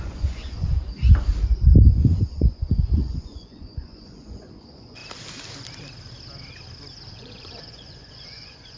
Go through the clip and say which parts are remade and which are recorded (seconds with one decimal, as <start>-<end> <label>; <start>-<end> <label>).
0.0-0.8 remade; 0.8-1.8 recorded; 1.8-5.0 remade; 5.0-7.1 recorded; 7.1-8.8 remade